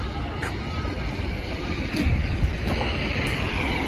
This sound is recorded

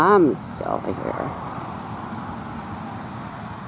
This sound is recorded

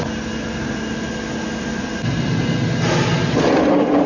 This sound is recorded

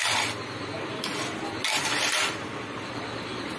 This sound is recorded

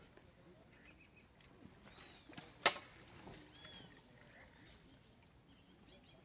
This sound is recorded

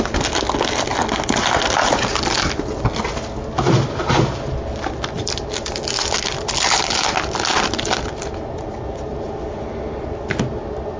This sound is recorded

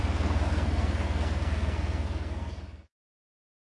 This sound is remade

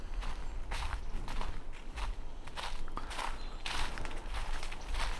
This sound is recorded